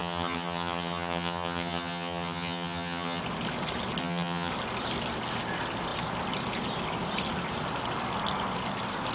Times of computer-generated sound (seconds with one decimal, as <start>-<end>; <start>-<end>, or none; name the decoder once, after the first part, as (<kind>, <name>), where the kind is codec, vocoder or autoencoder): 0.0-3.2 (vocoder, HiFi-GAN); 4.0-4.5